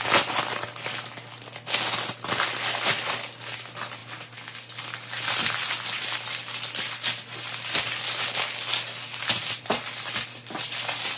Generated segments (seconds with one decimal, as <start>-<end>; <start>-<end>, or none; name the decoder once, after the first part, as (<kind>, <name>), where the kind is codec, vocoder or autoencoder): none